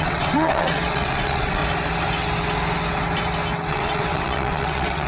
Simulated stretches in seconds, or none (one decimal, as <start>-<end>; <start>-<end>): 0.0-1.6; 3.7-5.1